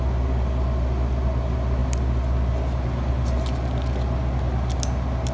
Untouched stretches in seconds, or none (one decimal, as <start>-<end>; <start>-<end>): 0.0-5.3